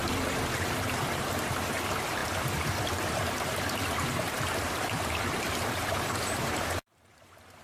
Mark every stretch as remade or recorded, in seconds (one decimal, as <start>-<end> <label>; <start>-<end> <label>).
0.0-7.6 remade